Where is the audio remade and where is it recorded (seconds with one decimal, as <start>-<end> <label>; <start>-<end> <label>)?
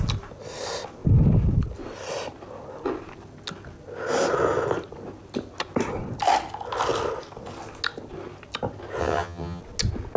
0.0-9.0 recorded; 9.0-9.6 remade; 9.6-10.2 recorded